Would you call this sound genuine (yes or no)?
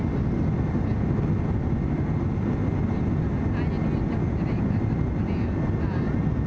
yes